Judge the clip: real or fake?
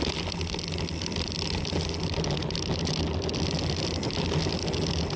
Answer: real